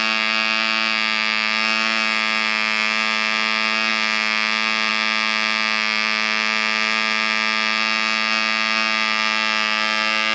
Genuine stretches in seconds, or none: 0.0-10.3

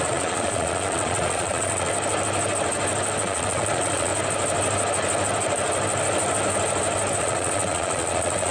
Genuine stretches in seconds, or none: 1.9-3.2; 4.1-7.2